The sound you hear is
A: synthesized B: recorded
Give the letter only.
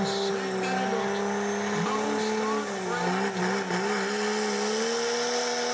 B